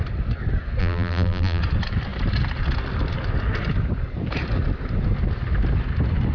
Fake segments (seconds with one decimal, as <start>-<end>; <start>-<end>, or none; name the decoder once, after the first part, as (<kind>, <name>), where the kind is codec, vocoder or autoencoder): 0.8-1.6 (vocoder, BigVGAN v2)

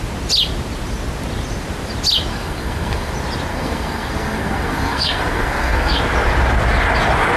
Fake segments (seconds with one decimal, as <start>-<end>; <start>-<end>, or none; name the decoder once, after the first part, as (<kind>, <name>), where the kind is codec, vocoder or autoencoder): 2.3-3.1 (codec, SNAC); 3.5-6.0